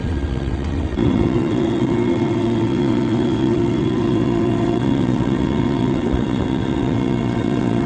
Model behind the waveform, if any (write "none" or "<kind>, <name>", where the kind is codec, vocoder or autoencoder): vocoder, WaveNeXt